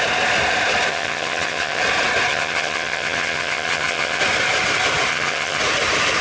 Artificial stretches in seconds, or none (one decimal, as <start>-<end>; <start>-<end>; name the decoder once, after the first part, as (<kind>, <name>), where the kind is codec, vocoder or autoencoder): 0.9-1.8 (vocoder, HiFi-GAN); 2.3-4.2; 5.1-5.6